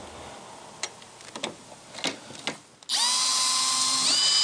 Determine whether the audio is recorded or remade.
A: recorded